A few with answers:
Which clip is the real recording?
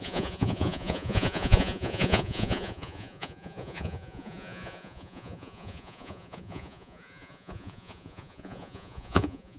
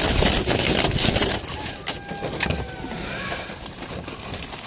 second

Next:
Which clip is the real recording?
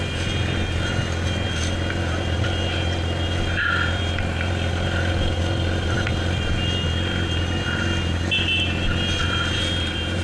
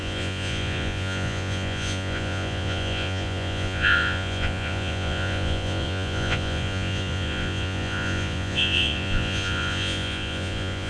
first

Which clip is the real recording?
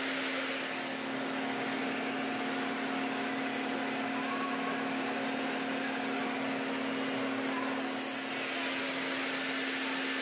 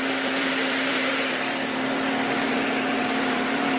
first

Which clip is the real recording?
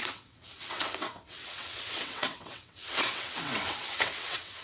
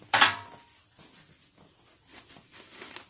second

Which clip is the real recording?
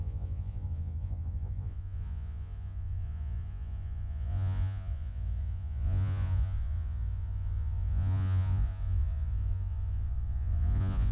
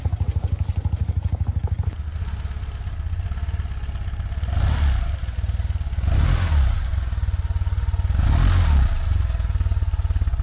second